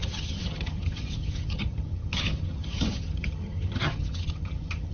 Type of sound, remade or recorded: remade